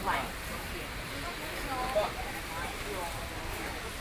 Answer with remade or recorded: recorded